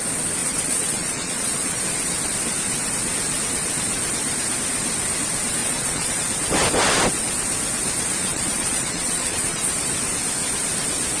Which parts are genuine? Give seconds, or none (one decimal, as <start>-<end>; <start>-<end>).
0.0-0.4; 1.8-5.6; 6.2-8.2; 9.7-11.2